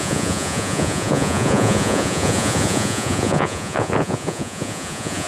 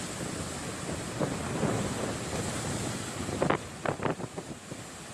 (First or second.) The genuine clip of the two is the second